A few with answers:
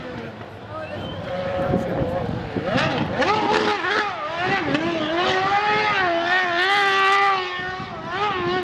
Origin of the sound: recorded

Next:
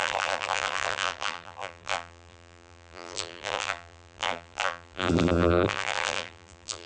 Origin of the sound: remade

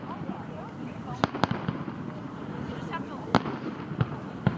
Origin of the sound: remade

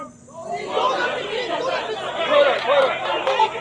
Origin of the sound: recorded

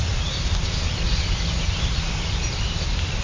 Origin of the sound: remade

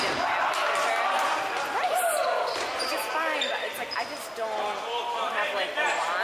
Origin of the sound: recorded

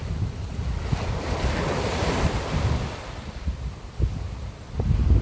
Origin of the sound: remade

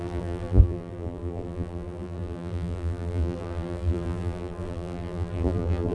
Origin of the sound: remade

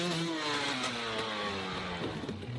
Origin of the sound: recorded